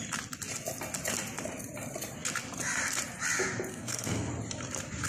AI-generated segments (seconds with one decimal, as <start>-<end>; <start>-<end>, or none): 3.7-4.3